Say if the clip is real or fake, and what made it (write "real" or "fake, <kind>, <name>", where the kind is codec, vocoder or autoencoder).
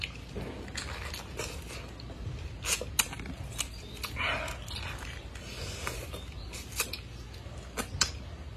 real